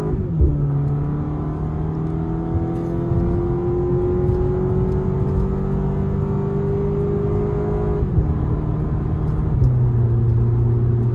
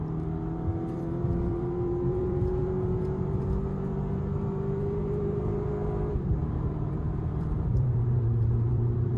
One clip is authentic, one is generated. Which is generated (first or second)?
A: second